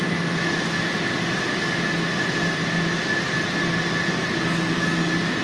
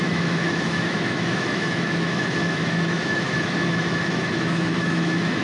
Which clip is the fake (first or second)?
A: second